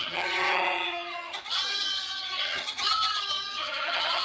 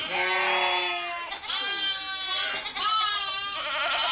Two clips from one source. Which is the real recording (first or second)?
second